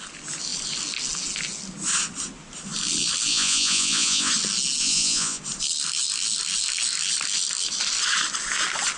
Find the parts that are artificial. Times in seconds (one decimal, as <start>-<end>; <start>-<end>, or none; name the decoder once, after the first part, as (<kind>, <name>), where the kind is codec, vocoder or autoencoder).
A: 3.3-4.3 (vocoder, Vocos); 4.8-5.4